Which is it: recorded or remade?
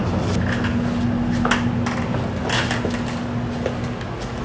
recorded